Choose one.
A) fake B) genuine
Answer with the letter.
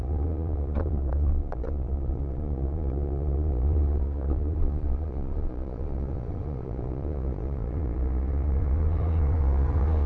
A